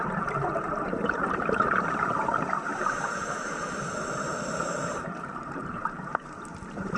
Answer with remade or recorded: remade